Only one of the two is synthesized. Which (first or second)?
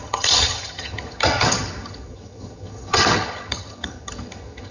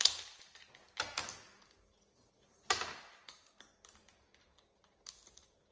first